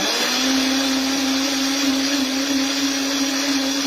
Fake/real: real